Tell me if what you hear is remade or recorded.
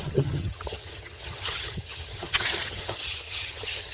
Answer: remade